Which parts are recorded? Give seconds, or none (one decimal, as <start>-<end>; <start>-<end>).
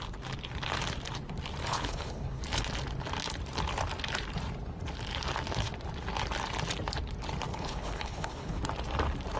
0.0-1.6; 2.4-7.5; 8.6-9.4